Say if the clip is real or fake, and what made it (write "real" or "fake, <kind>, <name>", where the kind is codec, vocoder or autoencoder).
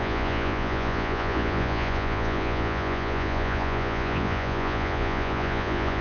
fake, vocoder, Vocos